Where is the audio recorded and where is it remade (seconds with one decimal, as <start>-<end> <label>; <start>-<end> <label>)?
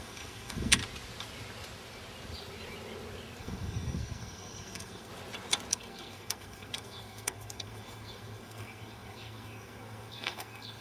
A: 0.0-0.8 remade; 0.8-3.4 recorded; 3.4-5.1 remade; 5.1-5.7 recorded; 5.7-10.8 remade